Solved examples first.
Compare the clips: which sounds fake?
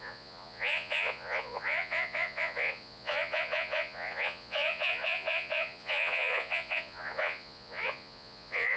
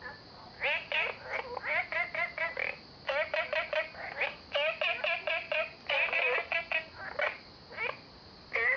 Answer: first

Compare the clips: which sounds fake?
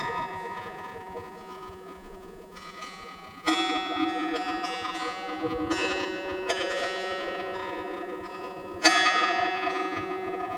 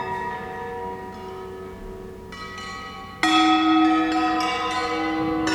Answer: first